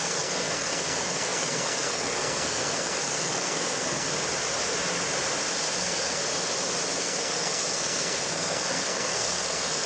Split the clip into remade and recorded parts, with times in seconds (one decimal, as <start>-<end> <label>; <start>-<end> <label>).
0.0-4.1 remade; 4.1-5.8 recorded; 5.8-6.2 remade; 6.2-7.0 recorded; 7.0-9.9 remade